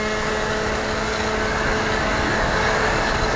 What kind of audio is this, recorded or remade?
remade